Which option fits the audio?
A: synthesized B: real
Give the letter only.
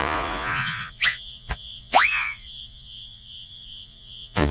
A